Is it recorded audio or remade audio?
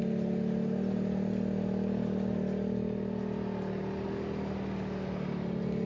recorded